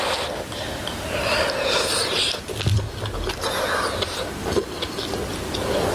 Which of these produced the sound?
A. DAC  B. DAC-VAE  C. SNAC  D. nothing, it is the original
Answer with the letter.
D